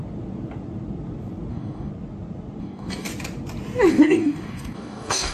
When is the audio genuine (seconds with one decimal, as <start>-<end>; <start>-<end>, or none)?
0.0-1.5; 1.9-2.6; 3.1-3.9